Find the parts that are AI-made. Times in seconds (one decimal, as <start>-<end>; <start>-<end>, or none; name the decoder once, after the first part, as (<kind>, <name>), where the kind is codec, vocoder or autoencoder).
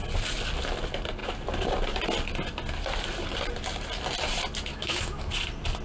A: 4.7-5.3 (autoencoder, DAC-VAE)